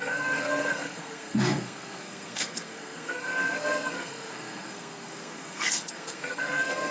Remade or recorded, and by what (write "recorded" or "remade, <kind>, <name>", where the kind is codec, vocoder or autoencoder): remade, codec, SNAC